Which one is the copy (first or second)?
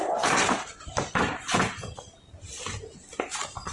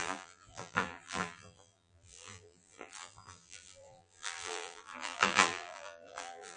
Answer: second